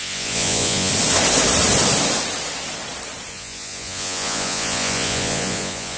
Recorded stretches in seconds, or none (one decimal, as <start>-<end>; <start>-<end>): 0.9-3.3

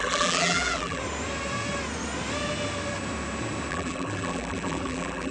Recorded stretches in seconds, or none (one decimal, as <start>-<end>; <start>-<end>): 1.0-3.7

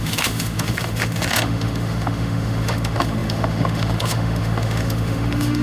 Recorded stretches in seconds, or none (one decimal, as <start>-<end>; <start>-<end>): none

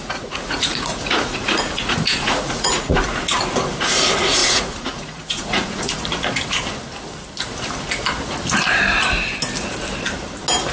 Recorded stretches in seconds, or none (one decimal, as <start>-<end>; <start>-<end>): 3.0-4.4; 6.0-10.7

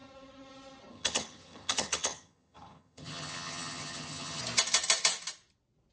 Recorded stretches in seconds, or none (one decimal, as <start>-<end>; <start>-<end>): 0.0-0.9; 4.4-5.9

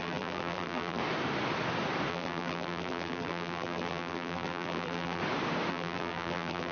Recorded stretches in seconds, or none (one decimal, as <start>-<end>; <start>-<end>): 1.0-2.1; 5.2-5.7